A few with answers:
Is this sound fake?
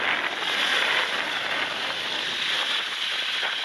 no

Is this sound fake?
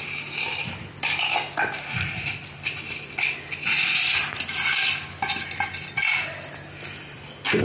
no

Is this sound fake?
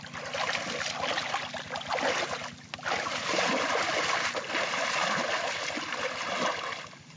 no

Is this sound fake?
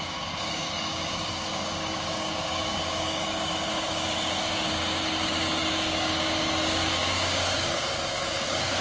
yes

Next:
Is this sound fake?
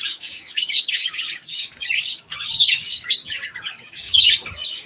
yes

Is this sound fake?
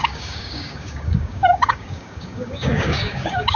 yes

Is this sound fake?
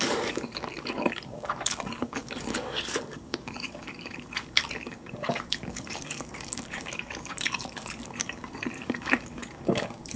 yes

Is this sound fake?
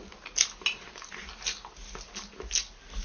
no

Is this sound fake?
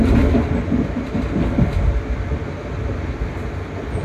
no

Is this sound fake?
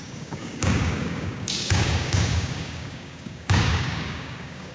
yes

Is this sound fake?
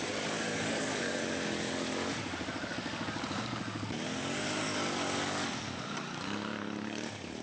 yes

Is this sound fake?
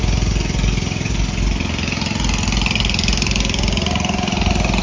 no